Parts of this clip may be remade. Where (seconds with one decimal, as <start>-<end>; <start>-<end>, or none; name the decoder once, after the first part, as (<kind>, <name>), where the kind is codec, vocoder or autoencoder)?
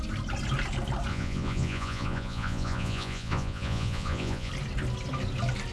1.1-4.5 (vocoder, Vocos)